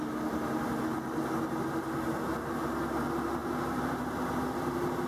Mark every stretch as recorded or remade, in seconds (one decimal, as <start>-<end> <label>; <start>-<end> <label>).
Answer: 0.0-5.1 recorded

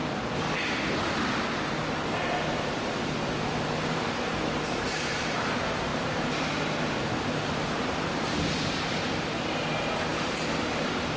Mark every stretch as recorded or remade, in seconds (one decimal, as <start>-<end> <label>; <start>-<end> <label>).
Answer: 0.0-2.5 recorded; 2.5-5.4 remade; 5.4-5.9 recorded; 5.9-8.5 remade; 8.5-10.1 recorded; 10.1-11.2 remade

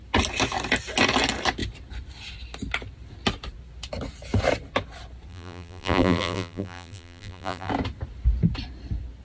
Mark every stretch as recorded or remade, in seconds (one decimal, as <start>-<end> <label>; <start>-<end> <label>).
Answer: 0.0-5.3 recorded; 5.3-7.7 remade; 7.7-9.2 recorded

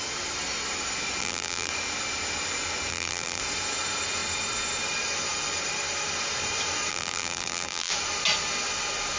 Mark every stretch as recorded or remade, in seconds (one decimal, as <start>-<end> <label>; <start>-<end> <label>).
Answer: 0.0-1.2 recorded; 1.2-1.7 remade; 1.7-2.9 recorded; 2.9-3.4 remade; 3.4-6.9 recorded; 6.9-7.9 remade; 7.9-9.2 recorded